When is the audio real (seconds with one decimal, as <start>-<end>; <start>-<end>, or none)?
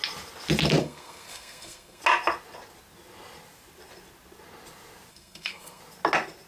0.0-0.8; 2.0-5.1; 5.8-6.5